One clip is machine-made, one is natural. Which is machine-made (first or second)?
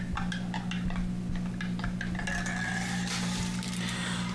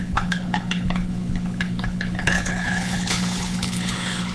second